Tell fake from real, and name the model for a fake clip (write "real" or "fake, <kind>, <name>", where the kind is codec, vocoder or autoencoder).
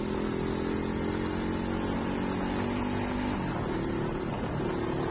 real